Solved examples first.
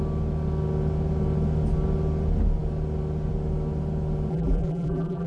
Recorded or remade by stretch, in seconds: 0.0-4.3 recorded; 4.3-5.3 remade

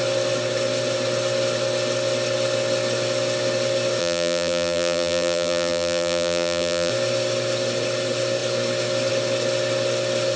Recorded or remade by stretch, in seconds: 0.0-4.0 recorded; 4.0-6.9 remade; 6.9-10.4 recorded

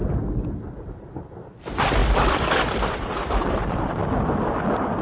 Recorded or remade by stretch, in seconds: 0.0-2.0 recorded; 2.0-2.9 remade; 2.9-4.0 recorded; 4.0-5.0 remade

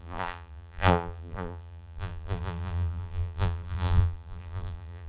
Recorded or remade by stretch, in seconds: 0.0-5.1 remade

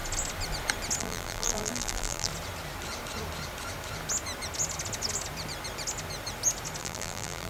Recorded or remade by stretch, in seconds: 0.0-1.0 recorded; 1.0-2.3 remade; 2.3-6.8 recorded; 6.8-7.5 remade

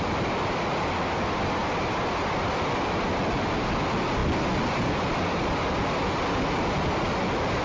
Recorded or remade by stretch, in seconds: 0.0-1.6 recorded; 1.6-3.1 remade; 3.1-4.2 recorded; 4.2-5.5 remade; 5.5-7.6 recorded

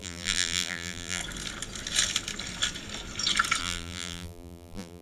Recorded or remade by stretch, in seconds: 0.0-1.2 remade; 1.2-3.6 recorded; 3.6-5.0 remade

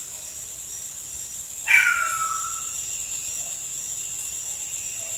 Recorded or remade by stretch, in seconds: 0.0-4.5 recorded; 4.5-5.2 remade